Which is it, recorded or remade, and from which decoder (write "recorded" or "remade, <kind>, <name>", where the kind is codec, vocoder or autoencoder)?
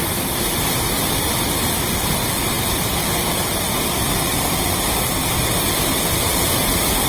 remade, vocoder, BigVGAN v2